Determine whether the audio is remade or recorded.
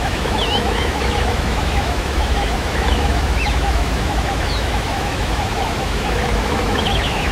remade